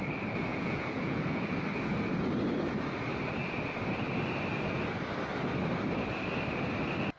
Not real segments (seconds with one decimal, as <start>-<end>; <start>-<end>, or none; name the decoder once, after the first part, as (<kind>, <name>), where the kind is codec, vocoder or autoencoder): 0.5-1.6 (vocoder, Vocos)